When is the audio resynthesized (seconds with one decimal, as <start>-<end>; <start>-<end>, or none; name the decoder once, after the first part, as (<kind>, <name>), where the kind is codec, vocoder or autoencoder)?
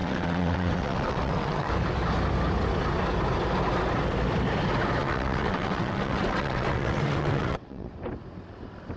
0.0-1.7 (vocoder, WaveNeXt); 5.0-7.9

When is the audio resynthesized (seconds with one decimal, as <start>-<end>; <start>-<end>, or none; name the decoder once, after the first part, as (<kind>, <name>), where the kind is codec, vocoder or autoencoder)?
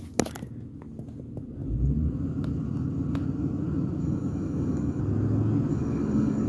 4.0-5.0 (codec, DAC); 5.7-6.5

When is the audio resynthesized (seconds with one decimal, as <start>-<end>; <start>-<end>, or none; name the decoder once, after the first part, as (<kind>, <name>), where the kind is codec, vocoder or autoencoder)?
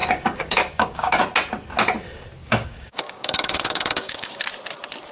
0.0-1.2 (codec, DAC); 2.4-4.4